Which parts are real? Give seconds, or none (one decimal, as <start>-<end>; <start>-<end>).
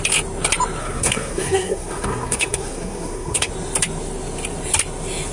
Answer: 0.0-0.8; 3.5-5.3